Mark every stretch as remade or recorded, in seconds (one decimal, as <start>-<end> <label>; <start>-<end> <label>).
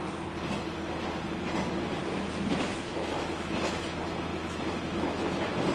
0.0-2.0 recorded; 2.0-3.8 remade; 3.8-4.3 recorded; 4.3-5.3 remade; 5.3-5.7 recorded